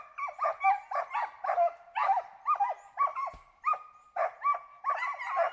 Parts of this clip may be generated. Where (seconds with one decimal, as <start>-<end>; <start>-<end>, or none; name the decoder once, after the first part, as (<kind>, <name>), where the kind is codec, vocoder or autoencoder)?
3.1-3.7 (vocoder, BigVGAN v2); 4.5-5.5